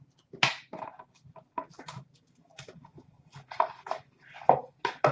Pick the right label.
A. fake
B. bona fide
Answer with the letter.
B